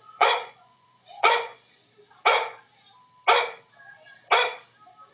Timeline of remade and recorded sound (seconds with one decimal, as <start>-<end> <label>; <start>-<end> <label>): 0.0-1.8 remade; 1.8-5.1 recorded